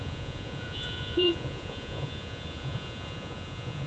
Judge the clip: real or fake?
fake